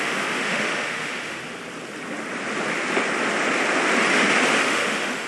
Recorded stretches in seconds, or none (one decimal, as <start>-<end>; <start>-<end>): 1.4-4.6